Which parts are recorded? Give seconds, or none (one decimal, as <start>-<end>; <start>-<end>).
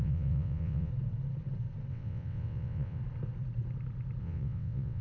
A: 0.9-1.9; 3.0-4.2